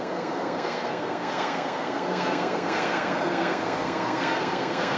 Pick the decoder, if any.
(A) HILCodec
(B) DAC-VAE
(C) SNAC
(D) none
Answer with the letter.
C